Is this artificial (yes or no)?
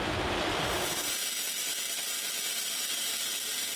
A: no